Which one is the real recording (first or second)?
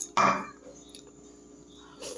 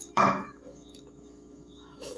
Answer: first